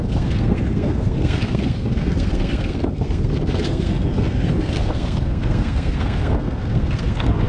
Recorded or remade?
remade